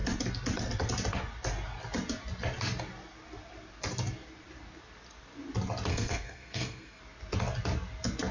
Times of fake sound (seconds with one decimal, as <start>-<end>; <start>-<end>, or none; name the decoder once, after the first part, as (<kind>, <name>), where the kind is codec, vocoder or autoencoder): 5.9-7.0 (codec, SNAC)